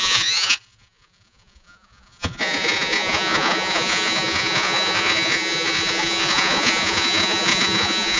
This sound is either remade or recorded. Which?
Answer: remade